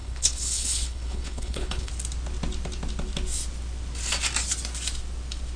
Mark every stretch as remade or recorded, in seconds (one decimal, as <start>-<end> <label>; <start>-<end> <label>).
0.0-1.9 remade; 1.9-5.6 recorded